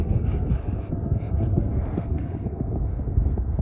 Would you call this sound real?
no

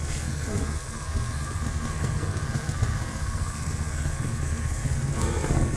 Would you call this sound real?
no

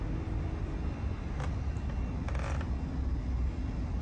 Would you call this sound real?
yes